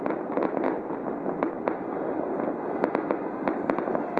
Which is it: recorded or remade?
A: recorded